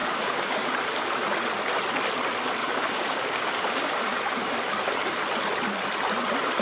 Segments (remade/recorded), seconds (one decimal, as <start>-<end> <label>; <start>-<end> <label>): 0.0-0.7 remade; 0.7-2.6 recorded; 2.6-4.9 remade; 4.9-6.6 recorded